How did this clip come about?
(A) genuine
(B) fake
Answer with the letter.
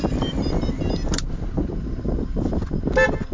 A